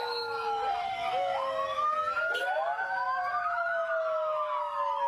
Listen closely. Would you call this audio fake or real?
fake